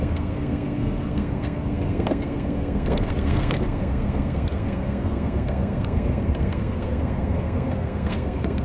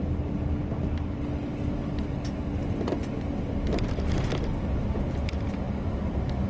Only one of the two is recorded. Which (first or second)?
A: second